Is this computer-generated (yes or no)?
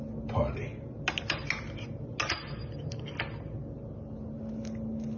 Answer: no